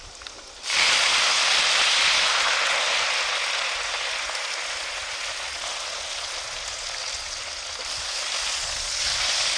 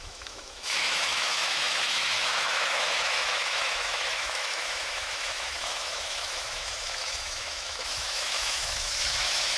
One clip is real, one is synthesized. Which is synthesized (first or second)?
second